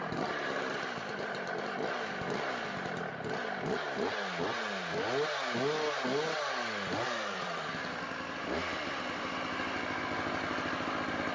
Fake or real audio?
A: real